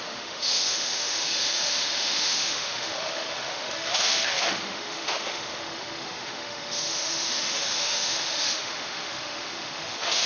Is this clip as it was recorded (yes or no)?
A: no